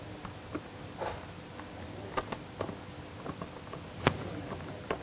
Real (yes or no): yes